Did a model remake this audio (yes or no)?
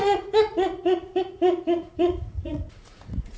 yes